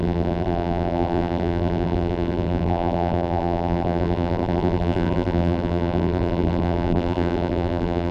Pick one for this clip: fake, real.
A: fake